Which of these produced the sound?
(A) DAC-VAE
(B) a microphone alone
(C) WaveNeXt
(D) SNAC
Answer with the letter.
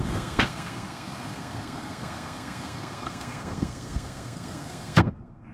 D